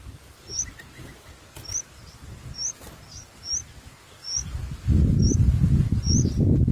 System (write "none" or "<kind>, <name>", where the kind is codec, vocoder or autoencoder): none